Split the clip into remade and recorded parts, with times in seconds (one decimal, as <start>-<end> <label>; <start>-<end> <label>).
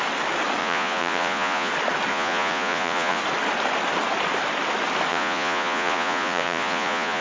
0.0-0.6 recorded; 0.6-1.7 remade; 1.7-2.1 recorded; 2.1-3.2 remade; 3.2-5.1 recorded; 5.1-7.2 remade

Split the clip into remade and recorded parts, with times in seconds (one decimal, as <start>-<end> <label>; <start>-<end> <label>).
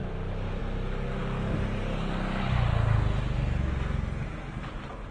0.0-5.1 recorded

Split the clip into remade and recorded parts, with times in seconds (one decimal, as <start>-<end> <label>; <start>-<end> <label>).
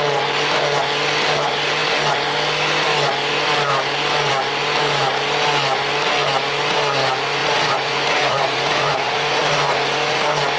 0.0-7.4 recorded; 7.4-10.2 remade; 10.2-10.6 recorded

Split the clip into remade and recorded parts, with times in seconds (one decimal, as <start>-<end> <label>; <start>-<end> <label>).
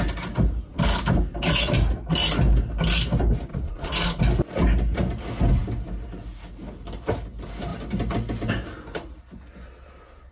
0.0-3.5 recorded; 3.5-4.2 remade; 4.2-10.3 recorded